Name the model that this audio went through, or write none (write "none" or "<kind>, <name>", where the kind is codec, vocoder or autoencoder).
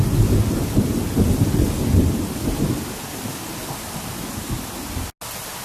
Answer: none